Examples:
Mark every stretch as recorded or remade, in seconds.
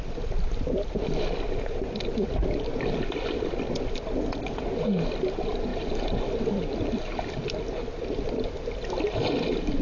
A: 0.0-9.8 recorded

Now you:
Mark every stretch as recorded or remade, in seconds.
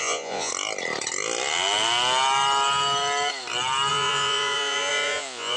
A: 0.0-0.5 remade; 0.5-3.9 recorded; 3.9-5.6 remade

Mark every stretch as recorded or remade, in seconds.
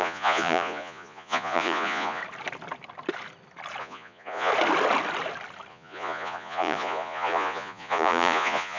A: 0.0-2.2 remade; 2.2-3.8 recorded; 3.8-4.5 remade; 4.5-5.7 recorded; 5.7-8.8 remade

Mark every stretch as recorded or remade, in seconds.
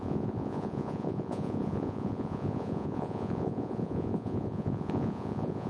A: 0.0-5.7 remade